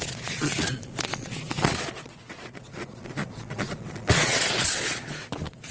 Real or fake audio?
fake